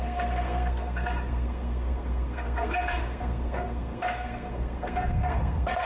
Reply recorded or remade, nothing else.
remade